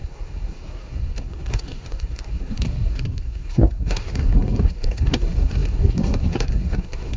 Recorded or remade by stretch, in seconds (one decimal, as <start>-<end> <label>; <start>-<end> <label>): 0.0-7.2 remade